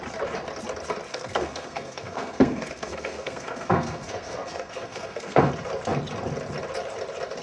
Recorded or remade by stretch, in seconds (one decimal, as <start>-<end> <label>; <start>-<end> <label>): 0.0-1.1 recorded; 1.1-5.5 remade; 5.5-7.4 recorded

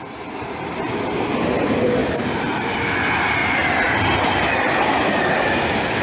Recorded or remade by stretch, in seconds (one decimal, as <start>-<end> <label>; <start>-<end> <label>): 0.0-6.0 recorded

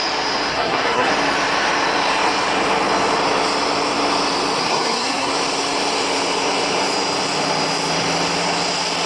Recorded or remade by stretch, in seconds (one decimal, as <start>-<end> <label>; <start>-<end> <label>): 0.0-0.5 recorded; 0.5-1.1 remade; 1.1-4.6 recorded; 4.6-5.3 remade; 5.3-9.1 recorded

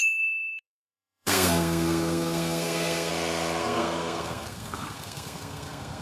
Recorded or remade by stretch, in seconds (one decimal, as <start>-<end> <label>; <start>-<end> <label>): 0.0-3.1 remade; 3.1-3.6 recorded; 3.6-6.0 remade

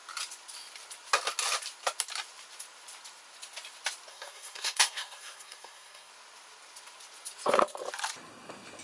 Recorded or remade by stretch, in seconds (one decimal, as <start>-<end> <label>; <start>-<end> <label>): 0.0-4.1 recorded; 4.1-6.1 remade; 6.1-8.8 recorded

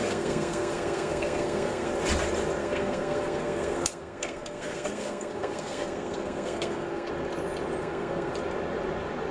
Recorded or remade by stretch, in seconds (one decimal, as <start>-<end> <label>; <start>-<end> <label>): 0.0-1.9 remade; 1.9-2.6 recorded; 2.6-7.1 remade; 7.1-7.8 recorded; 7.8-8.3 remade; 8.3-9.3 recorded

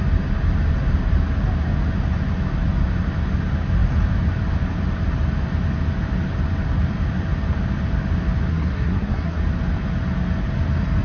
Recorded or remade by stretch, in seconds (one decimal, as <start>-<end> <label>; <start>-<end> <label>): 0.0-8.5 recorded; 8.5-9.4 remade; 9.4-11.0 recorded

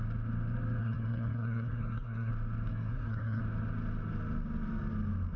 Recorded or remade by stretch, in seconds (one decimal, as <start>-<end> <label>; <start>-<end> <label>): 0.0-0.8 recorded; 0.8-2.3 remade; 2.3-2.7 recorded; 2.7-3.4 remade; 3.4-5.4 recorded